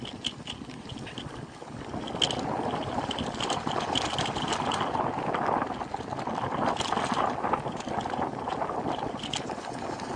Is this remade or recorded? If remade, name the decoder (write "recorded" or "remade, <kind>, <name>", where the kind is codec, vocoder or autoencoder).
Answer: recorded